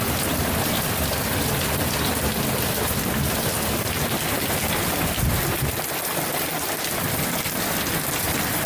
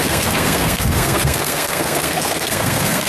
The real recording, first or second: first